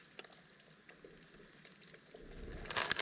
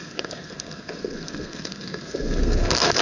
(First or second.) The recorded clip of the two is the first